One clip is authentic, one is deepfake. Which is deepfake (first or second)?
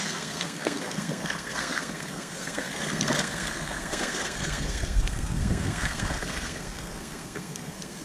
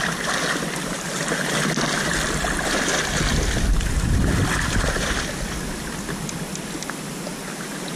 first